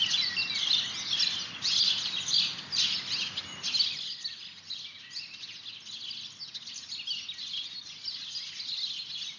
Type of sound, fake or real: real